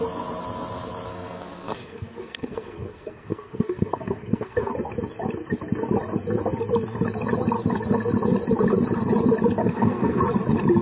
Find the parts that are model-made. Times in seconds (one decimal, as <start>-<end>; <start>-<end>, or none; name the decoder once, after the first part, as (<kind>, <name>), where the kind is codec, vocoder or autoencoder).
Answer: 1.1-4.7 (codec, SNAC); 9.6-10.2